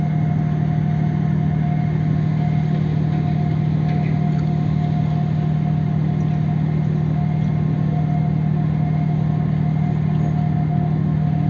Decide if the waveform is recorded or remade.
recorded